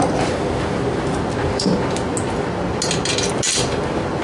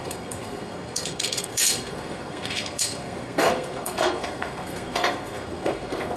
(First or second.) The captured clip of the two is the first